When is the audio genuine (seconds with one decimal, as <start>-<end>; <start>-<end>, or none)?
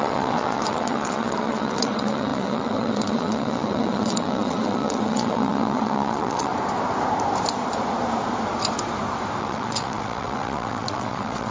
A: 6.5-9.4